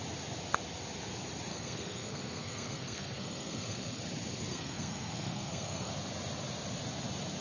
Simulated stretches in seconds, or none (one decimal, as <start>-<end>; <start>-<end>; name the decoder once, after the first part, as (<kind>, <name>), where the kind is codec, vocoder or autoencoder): 1.5-4.0 (codec, SNAC); 4.5-5.9